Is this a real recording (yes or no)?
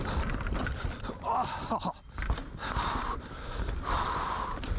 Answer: yes